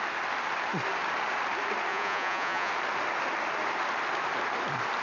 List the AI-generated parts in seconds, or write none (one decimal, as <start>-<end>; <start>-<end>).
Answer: 1.9-2.7